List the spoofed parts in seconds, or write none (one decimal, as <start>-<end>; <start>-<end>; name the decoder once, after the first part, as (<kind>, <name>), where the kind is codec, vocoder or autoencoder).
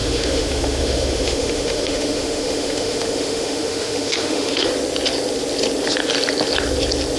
0.0-4.7 (autoencoder, DAC-VAE)